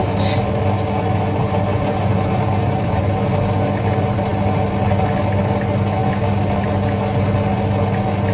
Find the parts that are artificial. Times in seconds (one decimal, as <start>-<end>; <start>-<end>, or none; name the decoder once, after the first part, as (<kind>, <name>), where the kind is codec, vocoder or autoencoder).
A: none